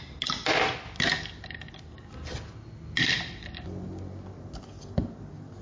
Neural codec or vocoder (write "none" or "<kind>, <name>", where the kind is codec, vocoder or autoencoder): none